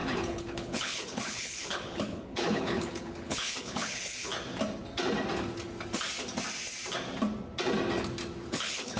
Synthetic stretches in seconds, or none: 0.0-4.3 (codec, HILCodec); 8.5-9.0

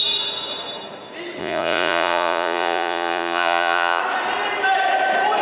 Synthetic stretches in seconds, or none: 1.4-4.0 (vocoder, Vocos)

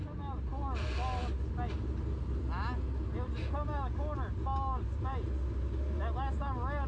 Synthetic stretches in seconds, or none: none

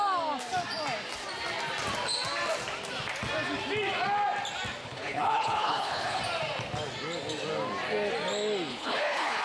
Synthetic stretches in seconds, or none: 4.8-6.2 (codec, HILCodec); 8.7-9.4

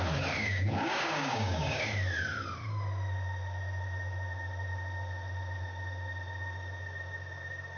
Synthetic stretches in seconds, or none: 0.4-1.8 (codec, DAC)

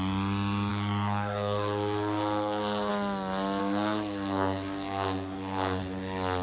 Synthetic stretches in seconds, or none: 0.7-2.9 (codec, SNAC); 3.6-5.8